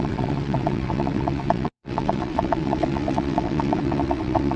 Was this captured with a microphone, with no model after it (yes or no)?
no